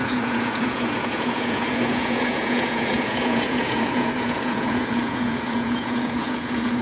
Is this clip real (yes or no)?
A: no